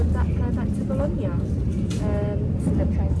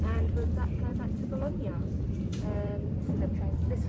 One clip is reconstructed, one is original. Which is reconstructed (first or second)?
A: second